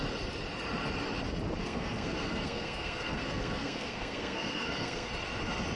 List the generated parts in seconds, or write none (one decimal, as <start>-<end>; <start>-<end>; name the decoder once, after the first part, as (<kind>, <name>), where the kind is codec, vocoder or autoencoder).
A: 1.6-5.1 (codec, SNAC)